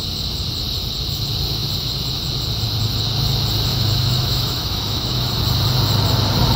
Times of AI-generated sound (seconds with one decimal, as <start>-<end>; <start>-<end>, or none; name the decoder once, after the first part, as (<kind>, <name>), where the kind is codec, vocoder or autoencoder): 3.7-5.4 (autoencoder, DAC-VAE)